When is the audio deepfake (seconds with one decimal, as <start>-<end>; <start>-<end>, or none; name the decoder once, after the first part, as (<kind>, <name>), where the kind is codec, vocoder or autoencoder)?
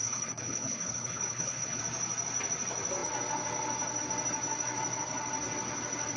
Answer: 0.0-1.8 (codec, HILCodec)